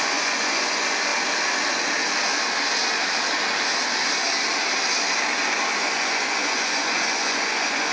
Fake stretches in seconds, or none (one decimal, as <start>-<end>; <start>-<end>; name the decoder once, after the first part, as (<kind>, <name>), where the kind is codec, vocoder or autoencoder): 0.0-1.1 (vocoder, Vocos); 5.8-7.9